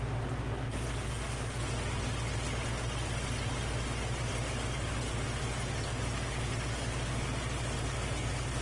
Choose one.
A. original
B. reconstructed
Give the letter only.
A